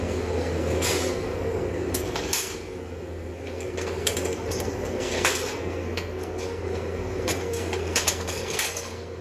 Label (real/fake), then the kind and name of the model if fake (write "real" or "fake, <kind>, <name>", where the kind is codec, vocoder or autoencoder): fake, codec, SNAC